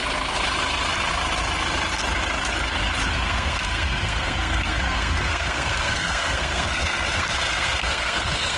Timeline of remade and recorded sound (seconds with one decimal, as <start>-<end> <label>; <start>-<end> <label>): 0.0-3.1 recorded; 3.1-8.6 remade